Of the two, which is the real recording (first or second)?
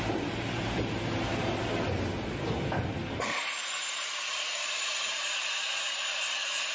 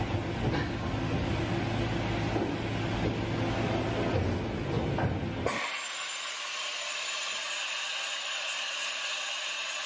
second